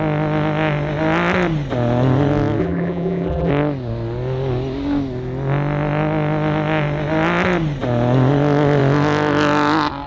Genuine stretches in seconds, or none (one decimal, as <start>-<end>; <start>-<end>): 0.0-2.6; 3.5-10.1